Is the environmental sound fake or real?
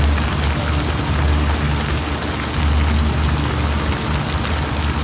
real